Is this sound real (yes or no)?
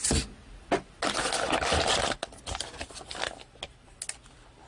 yes